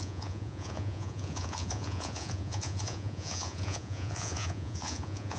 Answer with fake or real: fake